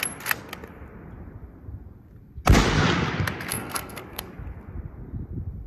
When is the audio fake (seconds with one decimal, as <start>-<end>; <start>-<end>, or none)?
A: 3.5-4.3